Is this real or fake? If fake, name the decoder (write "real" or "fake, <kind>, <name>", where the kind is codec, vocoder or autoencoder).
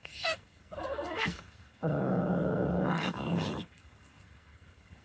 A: fake, codec, SNAC